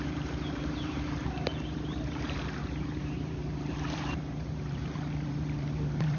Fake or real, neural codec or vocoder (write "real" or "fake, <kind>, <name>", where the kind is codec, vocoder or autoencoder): fake, vocoder, BigVGAN v2